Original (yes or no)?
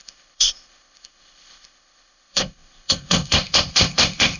no